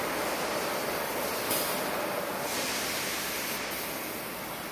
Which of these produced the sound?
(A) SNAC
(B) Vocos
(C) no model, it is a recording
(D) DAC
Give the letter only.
C